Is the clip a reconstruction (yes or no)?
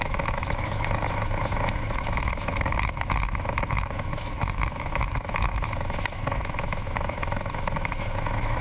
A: yes